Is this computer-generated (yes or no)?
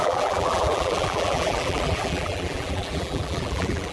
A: yes